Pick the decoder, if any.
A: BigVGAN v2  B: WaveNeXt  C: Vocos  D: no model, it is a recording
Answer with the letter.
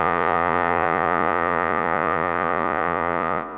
C